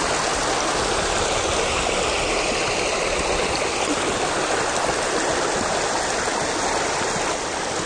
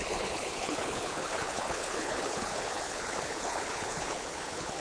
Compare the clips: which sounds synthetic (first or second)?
second